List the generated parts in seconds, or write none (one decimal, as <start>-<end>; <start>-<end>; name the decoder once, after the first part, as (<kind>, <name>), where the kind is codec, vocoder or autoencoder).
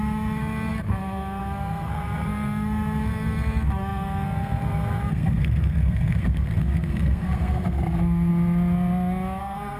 0.0-8.3 (codec, SNAC); 9.4-9.8